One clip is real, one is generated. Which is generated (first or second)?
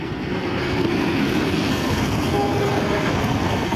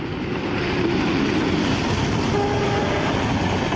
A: first